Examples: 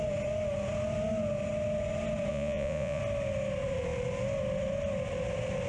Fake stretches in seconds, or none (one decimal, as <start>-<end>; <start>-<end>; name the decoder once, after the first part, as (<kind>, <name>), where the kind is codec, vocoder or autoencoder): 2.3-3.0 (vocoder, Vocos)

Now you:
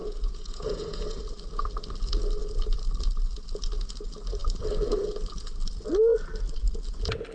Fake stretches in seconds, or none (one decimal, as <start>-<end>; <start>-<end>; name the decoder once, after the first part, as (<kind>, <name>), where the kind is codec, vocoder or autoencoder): 0.0-1.2 (vocoder, Vocos)

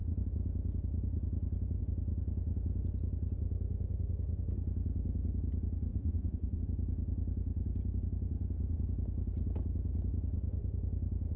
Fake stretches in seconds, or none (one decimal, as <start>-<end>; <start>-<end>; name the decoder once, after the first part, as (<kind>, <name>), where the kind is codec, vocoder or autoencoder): 5.9-6.6 (vocoder, Vocos)